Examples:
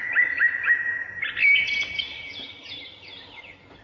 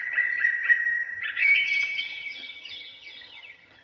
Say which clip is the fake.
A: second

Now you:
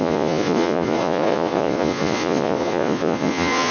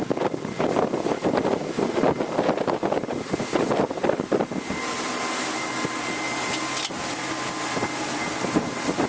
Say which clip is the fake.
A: first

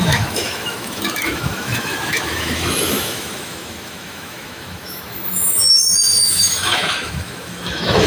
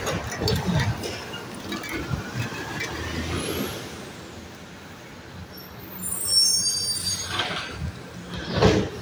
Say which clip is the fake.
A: first